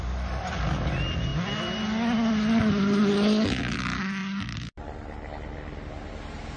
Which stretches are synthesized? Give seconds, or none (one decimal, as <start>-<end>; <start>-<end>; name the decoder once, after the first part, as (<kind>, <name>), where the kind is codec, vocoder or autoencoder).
none